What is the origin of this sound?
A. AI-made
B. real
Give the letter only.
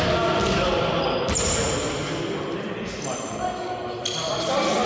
B